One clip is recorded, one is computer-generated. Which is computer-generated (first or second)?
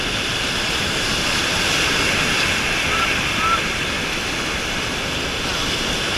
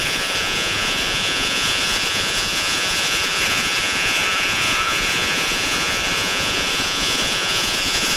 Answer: second